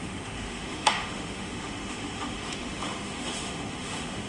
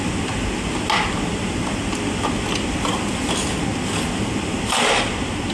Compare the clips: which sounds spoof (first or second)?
first